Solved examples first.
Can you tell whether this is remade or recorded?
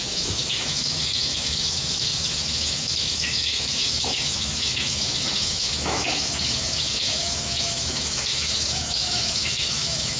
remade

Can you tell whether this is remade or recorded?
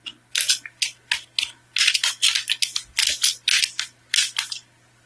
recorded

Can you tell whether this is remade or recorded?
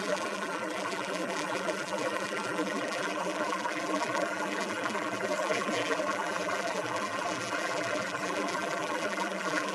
remade